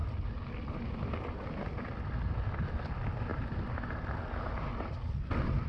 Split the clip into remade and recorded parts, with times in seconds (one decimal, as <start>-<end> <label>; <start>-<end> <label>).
0.0-5.7 recorded